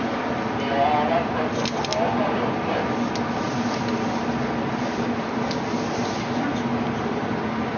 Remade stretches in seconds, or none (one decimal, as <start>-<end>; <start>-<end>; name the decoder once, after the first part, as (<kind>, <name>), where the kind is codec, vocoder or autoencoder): 1.9-4.4 (vocoder, BigVGAN v2)